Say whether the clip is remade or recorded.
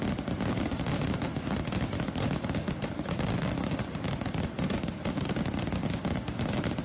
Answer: recorded